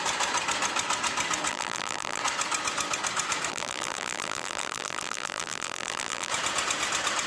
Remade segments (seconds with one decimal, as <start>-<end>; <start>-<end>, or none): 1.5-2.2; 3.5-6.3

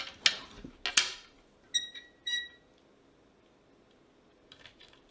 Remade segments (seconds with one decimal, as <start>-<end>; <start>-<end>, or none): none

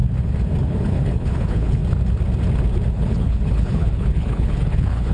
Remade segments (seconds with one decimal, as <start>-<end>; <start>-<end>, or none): 0.6-1.8; 2.9-5.1